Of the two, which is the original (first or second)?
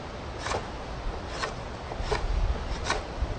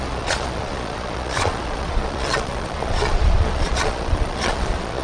first